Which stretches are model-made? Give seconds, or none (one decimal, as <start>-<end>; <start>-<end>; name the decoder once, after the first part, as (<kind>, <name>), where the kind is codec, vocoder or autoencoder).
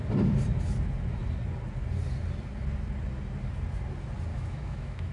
4.3-5.1 (autoencoder, DAC-VAE)